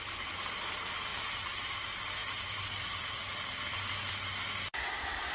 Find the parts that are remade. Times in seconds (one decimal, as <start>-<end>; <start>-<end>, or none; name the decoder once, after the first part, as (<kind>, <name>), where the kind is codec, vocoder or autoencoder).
2.2-5.3 (vocoder, BigVGAN v2)